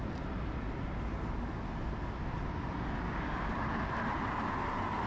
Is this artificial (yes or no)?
no